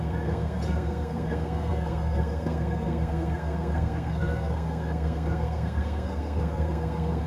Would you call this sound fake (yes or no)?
yes